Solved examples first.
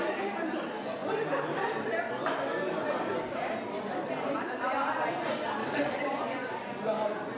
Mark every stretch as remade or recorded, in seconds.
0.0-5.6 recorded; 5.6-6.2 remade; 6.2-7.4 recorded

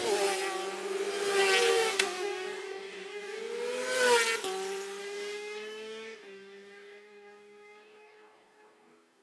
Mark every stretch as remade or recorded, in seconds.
0.0-1.7 recorded; 1.7-3.4 remade; 3.4-5.0 recorded; 5.0-9.2 remade

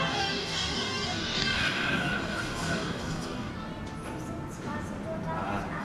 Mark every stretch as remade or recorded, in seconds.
0.0-3.5 remade; 3.5-5.8 recorded